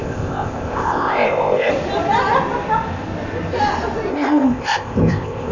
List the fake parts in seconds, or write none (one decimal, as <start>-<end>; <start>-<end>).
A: 0.0-1.7; 4.1-5.5